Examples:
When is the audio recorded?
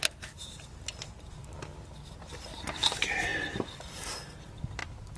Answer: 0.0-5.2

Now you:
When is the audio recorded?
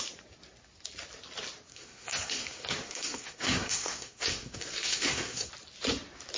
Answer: 0.0-1.7; 5.5-6.4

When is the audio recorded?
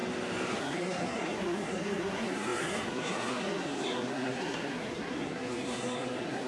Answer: 0.0-0.6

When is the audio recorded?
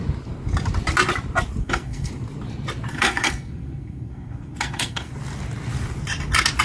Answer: 0.0-1.6; 2.1-2.9; 5.1-6.6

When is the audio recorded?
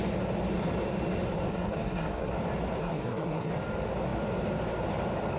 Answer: 0.0-1.5; 2.3-2.8; 3.5-5.4